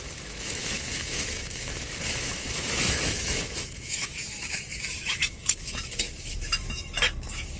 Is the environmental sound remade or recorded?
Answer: remade